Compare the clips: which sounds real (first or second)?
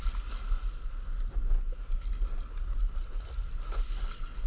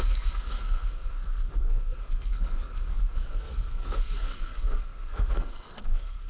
first